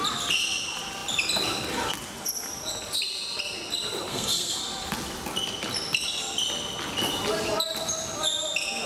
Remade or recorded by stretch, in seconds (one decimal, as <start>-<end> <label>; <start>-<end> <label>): 0.0-4.1 recorded; 4.1-4.6 remade; 4.6-8.9 recorded